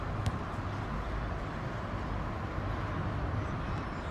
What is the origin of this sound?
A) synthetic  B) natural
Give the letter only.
B